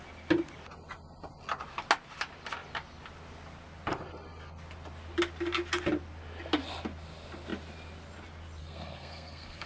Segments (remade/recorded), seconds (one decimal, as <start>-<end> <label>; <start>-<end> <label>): 0.0-8.6 recorded; 8.6-9.7 remade